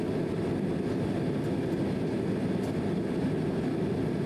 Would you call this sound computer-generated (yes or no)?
no